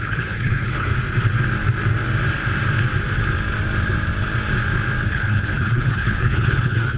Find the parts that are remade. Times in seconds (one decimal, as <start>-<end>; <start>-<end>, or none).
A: 0.0-0.9; 5.1-7.0